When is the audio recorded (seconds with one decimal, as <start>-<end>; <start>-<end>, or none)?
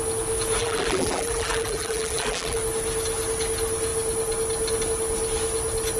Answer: 0.0-0.6; 2.6-6.0